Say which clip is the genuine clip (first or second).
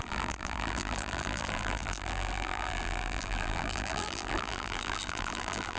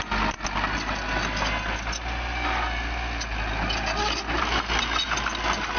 second